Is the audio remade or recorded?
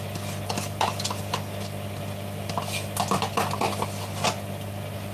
recorded